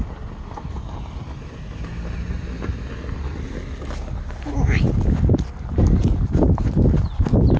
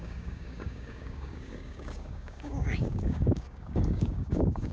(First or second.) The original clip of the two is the first